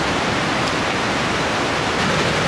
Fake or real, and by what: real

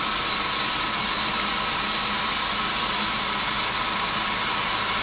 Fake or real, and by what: real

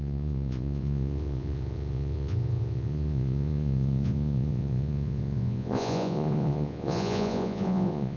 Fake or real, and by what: fake, vocoder, Vocos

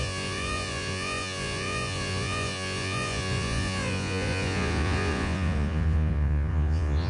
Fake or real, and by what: fake, vocoder, Vocos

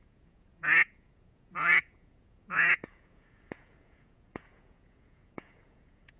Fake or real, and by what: fake, vocoder, Vocos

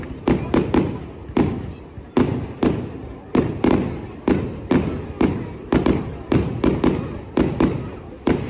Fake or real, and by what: real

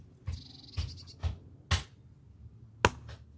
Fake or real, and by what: real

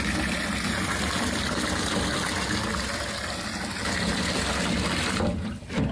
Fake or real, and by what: real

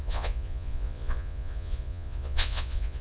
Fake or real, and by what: fake, vocoder, Vocos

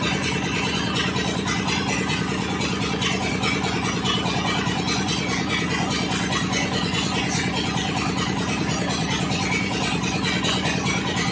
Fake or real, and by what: fake, vocoder, Vocos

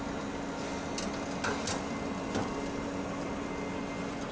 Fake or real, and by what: real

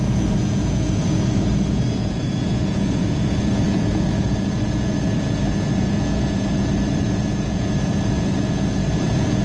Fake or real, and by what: fake, vocoder, Vocos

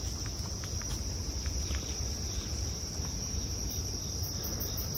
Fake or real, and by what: real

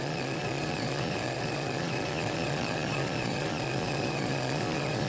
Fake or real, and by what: fake, vocoder, Vocos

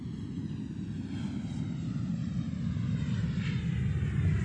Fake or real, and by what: real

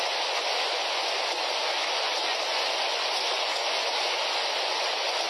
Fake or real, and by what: fake, vocoder, Vocos